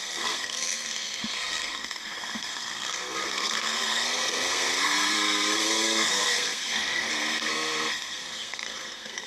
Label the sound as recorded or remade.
remade